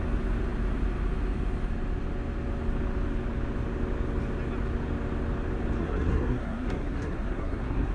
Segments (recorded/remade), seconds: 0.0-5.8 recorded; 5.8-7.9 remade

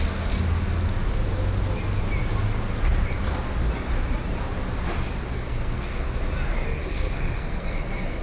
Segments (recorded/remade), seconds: 0.0-5.3 recorded; 5.3-6.2 remade; 6.2-6.8 recorded; 6.8-8.2 remade

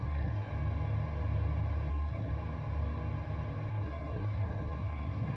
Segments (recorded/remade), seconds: 0.0-0.5 remade; 0.5-1.9 recorded; 1.9-2.3 remade; 2.3-3.7 recorded; 3.7-5.4 remade

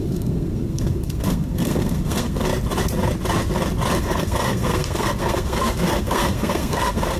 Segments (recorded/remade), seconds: 0.0-2.5 remade; 2.5-4.0 recorded; 4.0-7.2 remade

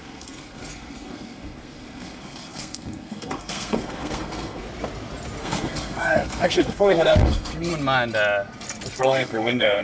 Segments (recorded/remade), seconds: 0.0-4.6 remade; 4.6-5.4 recorded; 5.4-7.7 remade; 7.7-9.0 recorded; 9.0-9.8 remade

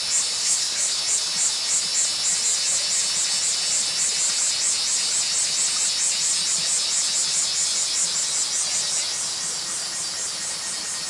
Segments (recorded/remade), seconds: 0.0-0.4 recorded; 0.4-1.0 remade; 1.0-11.1 recorded

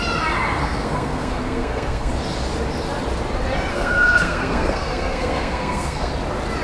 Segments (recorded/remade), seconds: 0.0-0.6 recorded; 0.6-2.1 remade; 2.1-3.7 recorded; 3.7-6.1 remade; 6.1-6.6 recorded

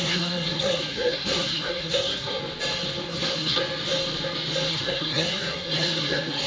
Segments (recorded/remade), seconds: 0.0-2.4 remade; 2.4-3.1 recorded; 3.1-3.6 remade; 3.6-4.7 recorded; 4.7-6.5 remade